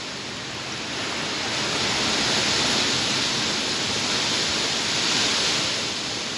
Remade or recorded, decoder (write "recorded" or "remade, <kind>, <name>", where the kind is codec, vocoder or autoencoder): recorded